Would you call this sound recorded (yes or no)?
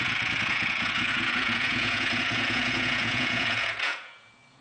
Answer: no